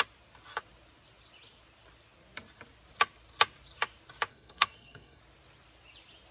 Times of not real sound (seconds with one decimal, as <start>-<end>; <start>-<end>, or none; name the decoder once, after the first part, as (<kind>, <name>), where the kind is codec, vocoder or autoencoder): 4.3-5.2 (codec, SNAC)